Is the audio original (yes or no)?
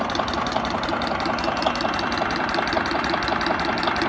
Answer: yes